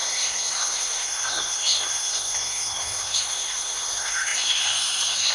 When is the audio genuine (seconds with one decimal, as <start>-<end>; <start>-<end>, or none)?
none